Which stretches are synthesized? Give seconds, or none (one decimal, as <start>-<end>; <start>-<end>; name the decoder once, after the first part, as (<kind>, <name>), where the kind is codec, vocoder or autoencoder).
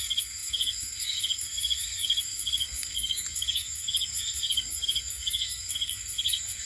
0.0-6.7 (codec, SNAC)